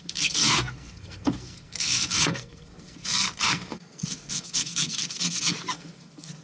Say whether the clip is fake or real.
fake